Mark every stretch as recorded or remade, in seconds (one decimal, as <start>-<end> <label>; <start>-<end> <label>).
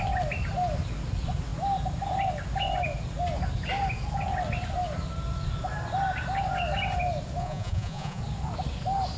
0.0-7.4 recorded; 7.4-8.2 remade; 8.2-9.2 recorded